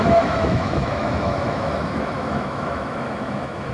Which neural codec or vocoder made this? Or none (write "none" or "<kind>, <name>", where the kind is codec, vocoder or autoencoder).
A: autoencoder, DAC-VAE